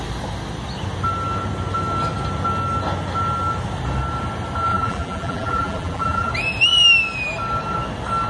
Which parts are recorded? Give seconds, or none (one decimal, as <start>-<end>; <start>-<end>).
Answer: 0.0-4.7; 6.3-8.3